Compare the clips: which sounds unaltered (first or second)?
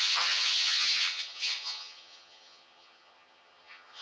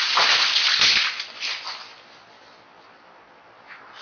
second